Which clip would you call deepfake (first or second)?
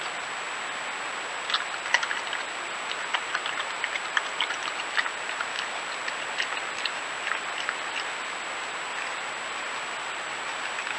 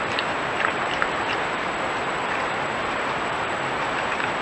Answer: second